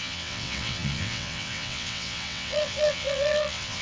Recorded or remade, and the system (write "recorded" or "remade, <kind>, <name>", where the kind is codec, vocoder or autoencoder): remade, vocoder, WaveNeXt